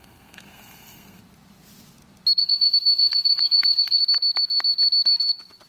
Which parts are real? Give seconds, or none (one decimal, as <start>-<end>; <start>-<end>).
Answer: 1.2-2.4; 4.0-5.7